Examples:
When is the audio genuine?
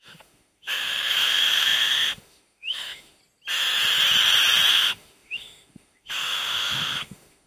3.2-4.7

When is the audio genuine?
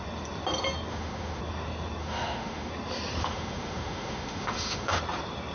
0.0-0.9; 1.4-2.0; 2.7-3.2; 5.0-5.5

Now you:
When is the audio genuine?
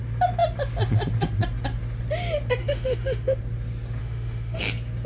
0.0-2.6; 3.4-4.0; 4.6-5.1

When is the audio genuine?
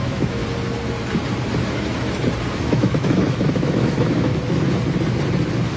0.4-2.6; 4.3-5.8